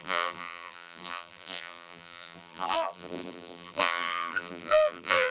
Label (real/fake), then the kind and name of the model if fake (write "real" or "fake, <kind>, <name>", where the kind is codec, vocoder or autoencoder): fake, vocoder, BigVGAN v2